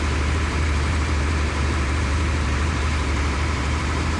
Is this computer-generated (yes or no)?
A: yes